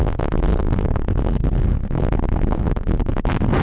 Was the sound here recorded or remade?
remade